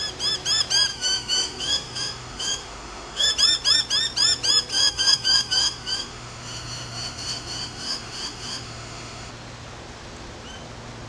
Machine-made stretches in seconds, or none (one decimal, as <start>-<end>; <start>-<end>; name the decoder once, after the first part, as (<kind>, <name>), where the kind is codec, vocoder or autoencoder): 0.9-3.3 (autoencoder, DAC-VAE); 4.7-9.3